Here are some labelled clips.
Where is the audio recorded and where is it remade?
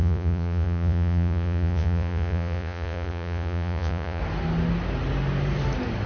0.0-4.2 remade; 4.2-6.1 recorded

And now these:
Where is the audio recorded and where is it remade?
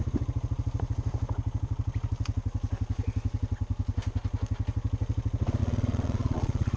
0.0-5.6 recorded; 5.6-6.8 remade